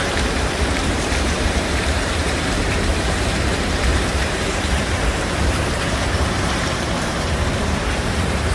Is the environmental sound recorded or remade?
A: remade